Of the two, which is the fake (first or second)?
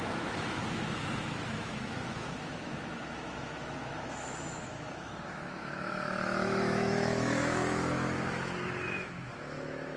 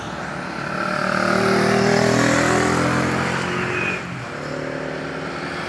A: first